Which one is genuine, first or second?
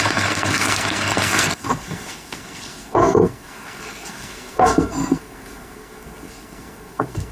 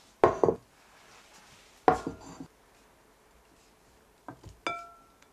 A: second